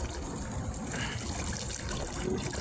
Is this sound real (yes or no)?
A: yes